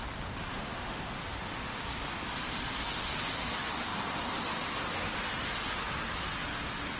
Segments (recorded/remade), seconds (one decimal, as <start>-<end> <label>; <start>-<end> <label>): 0.0-0.5 recorded; 0.5-1.8 remade; 1.8-7.0 recorded